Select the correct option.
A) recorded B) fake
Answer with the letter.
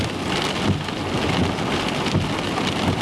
A